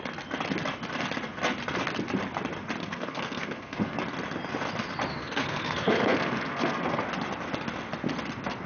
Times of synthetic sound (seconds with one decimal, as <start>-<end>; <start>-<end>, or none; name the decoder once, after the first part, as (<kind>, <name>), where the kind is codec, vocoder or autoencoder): 2.8-4.0 (codec, SNAC); 5.2-7.0